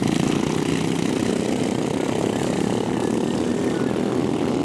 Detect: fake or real real